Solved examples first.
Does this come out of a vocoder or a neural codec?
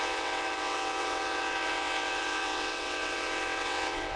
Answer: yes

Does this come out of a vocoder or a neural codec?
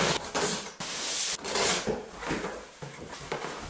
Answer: no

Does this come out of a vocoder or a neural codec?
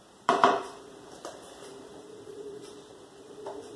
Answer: yes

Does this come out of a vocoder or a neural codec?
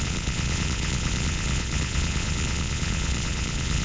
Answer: yes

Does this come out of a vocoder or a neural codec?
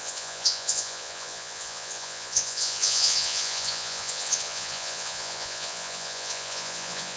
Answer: yes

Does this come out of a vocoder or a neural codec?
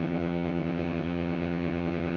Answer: yes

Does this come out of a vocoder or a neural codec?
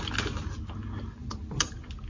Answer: no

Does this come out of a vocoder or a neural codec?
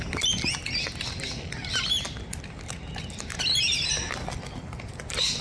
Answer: no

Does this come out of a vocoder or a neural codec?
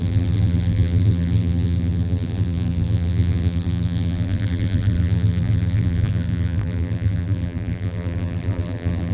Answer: yes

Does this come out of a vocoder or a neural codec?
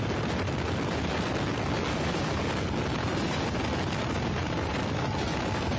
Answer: no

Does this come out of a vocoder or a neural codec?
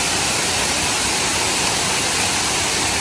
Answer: no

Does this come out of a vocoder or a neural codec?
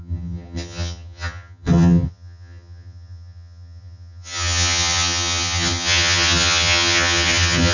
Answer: yes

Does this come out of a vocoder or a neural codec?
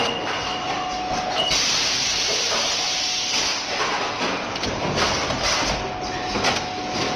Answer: no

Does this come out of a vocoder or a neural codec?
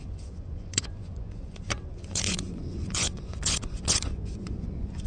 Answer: yes